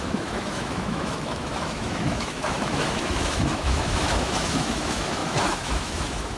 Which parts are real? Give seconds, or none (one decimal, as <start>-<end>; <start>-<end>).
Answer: none